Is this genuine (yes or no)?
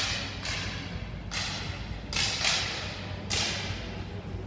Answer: yes